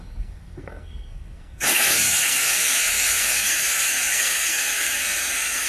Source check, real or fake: fake